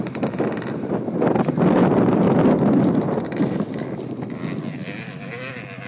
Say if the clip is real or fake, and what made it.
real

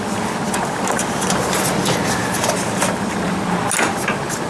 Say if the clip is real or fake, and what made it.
real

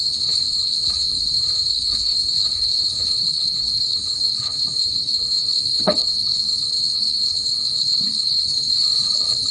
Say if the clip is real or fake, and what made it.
fake, codec, HILCodec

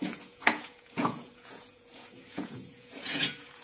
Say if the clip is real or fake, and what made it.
fake, vocoder, Vocos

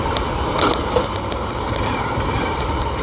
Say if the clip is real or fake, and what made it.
real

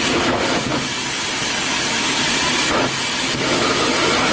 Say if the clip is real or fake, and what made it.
real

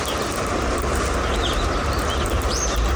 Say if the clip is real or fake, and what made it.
fake, vocoder, BigVGAN v2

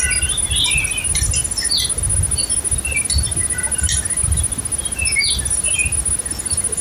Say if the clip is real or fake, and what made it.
real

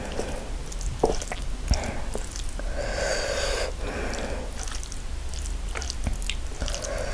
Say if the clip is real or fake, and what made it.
real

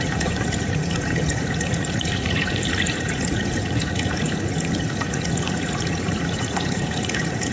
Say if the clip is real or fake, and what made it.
fake, vocoder, Vocos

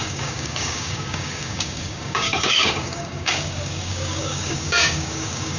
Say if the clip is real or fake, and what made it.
fake, codec, DAC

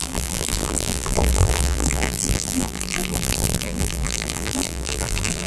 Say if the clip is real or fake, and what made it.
fake, vocoder, BigVGAN v2